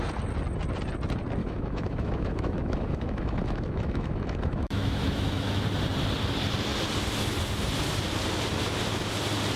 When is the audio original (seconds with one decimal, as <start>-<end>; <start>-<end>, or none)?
0.0-1.4; 5.6-9.6